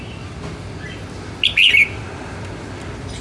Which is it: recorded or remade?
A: recorded